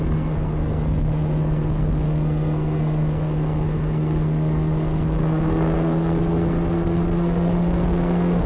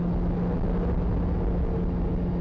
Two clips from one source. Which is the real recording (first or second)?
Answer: second